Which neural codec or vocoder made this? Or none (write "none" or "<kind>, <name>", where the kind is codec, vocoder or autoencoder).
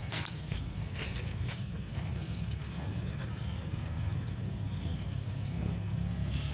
codec, SNAC